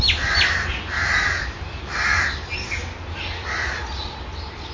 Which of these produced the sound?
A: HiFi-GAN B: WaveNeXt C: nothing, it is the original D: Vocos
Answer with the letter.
C